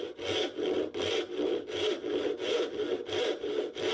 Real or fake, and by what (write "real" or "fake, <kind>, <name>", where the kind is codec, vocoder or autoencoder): real